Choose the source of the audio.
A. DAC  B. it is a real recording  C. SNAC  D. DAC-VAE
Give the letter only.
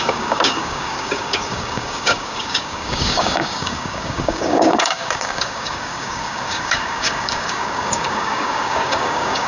A